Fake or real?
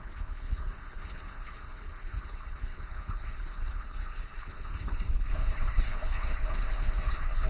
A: fake